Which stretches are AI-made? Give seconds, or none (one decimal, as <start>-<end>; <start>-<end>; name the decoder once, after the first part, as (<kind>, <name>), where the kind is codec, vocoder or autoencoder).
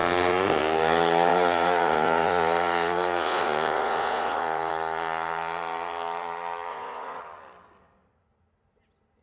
1.3-4.7 (vocoder, Vocos); 6.7-7.2